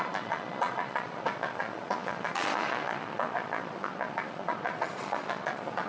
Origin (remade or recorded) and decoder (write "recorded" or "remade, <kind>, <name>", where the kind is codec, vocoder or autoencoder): remade, vocoder, Vocos